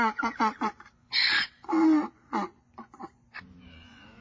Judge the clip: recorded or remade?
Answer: remade